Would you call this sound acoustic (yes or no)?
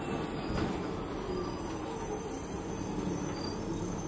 yes